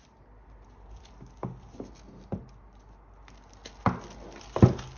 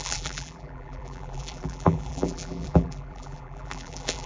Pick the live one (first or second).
first